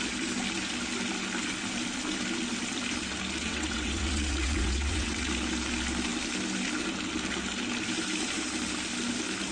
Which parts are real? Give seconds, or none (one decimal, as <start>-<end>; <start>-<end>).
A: 0.0-3.4; 5.3-9.5